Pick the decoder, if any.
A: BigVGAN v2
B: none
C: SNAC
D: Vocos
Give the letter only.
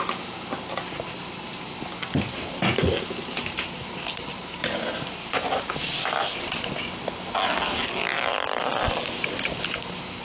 B